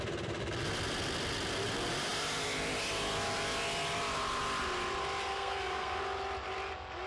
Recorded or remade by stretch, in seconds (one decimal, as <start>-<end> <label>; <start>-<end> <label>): 0.0-5.3 recorded; 5.3-6.0 remade; 6.0-7.1 recorded